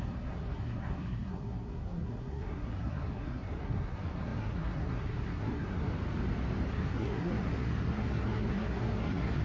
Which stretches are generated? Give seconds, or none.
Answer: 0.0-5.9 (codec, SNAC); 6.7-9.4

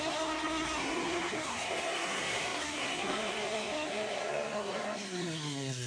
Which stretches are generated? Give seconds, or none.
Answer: 0.0-5.9 (codec, SNAC)

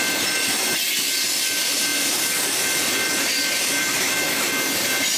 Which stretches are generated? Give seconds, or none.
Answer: none

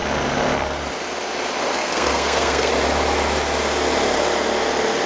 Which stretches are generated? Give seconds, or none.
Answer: 1.7-2.7 (codec, SNAC)

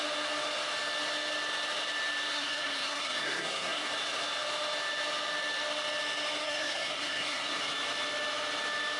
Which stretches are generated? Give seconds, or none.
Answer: 2.3-3.9 (codec, SNAC); 6.4-7.6

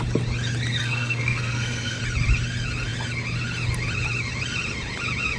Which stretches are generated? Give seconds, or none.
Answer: 0.8-2.0 (codec, SNAC)

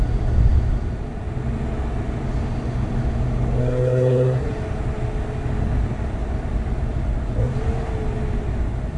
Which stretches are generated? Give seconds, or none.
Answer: 3.6-4.5 (codec, SNAC)

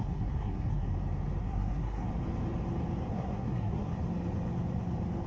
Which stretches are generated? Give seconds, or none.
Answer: 0.0-0.9 (codec, SNAC); 1.4-2.1; 3.1-3.9